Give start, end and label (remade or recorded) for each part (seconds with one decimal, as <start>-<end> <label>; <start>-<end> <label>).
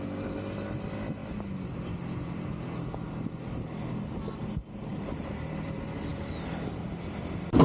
0.0-7.6 recorded